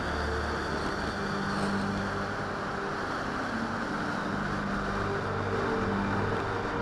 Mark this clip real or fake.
real